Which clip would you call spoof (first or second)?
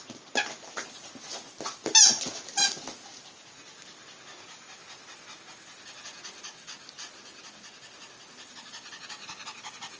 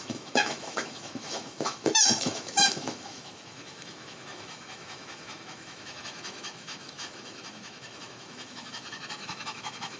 second